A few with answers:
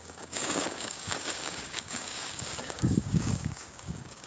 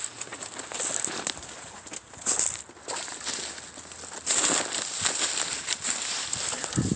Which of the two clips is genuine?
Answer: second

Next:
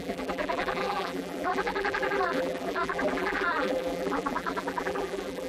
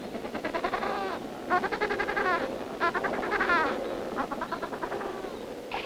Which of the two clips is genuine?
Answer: second